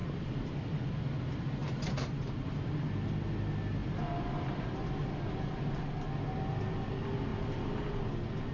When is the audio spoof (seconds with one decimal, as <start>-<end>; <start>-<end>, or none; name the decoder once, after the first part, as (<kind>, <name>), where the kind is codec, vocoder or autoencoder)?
0.0-0.6 (vocoder, BigVGAN v2); 1.6-2.7; 7.3-8.0